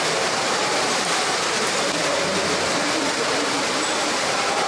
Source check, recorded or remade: recorded